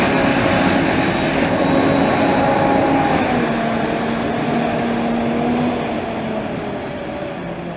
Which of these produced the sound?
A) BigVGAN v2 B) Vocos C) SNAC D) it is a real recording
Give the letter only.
D